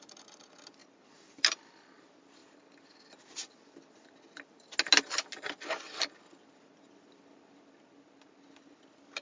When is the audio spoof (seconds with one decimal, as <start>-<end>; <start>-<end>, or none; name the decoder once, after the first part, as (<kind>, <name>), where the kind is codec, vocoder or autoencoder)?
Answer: 0.8-1.9 (vocoder, BigVGAN v2); 2.4-4.2